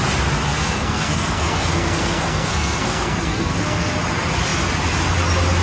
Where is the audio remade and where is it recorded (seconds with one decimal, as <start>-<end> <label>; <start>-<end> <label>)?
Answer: 0.0-0.5 recorded; 0.5-3.9 remade; 3.9-5.6 recorded